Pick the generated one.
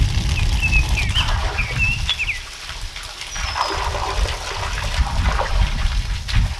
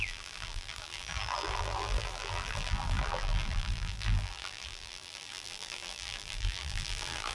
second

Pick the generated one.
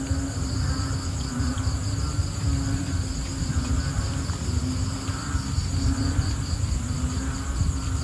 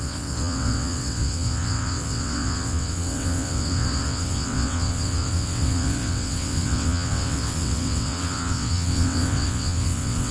second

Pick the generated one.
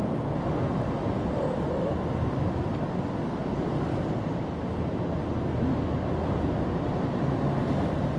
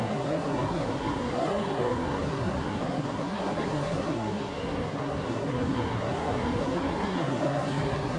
second